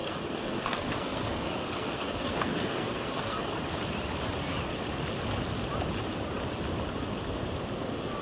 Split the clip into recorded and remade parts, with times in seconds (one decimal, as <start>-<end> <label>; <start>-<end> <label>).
0.0-3.5 remade; 3.5-8.2 recorded